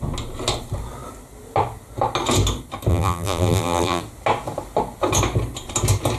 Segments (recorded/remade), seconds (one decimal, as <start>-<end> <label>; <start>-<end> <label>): 0.0-2.9 recorded; 2.9-4.0 remade; 4.0-6.2 recorded